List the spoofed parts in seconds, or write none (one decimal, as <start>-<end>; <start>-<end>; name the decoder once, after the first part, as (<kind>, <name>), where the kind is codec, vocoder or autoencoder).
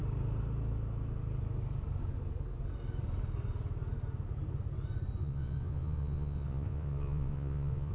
5.2-7.9 (vocoder, Vocos)